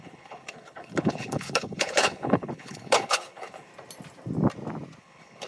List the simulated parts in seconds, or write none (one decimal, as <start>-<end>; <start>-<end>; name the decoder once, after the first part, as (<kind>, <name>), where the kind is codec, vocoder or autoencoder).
0.0-3.7 (codec, HILCodec); 5.0-5.5